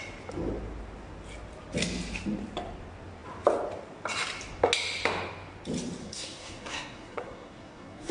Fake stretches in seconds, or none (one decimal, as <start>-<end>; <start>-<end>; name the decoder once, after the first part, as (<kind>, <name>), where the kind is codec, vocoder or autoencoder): 6.0-8.1 (codec, SNAC)